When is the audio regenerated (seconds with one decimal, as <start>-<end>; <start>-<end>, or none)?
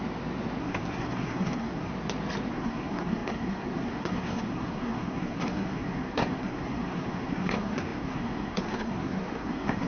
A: 0.6-1.9; 2.5-9.9